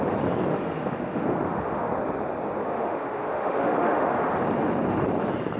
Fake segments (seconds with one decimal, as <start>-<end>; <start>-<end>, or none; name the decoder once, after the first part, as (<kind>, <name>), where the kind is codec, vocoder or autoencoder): 0.5-1.9 (autoencoder, DAC-VAE); 2.6-4.3